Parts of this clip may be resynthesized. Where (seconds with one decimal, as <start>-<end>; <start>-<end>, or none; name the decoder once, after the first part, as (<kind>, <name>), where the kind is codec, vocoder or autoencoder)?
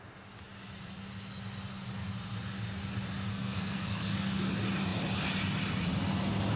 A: 3.3-4.4 (codec, SNAC)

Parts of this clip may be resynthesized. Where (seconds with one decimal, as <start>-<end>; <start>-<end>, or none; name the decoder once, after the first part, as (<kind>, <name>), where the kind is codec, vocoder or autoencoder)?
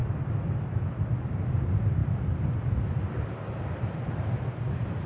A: none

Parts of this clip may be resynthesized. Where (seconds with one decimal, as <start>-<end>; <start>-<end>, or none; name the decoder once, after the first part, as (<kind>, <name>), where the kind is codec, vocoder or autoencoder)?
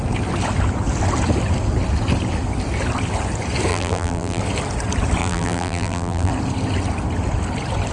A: 3.7-4.4 (vocoder, BigVGAN v2); 5.2-6.3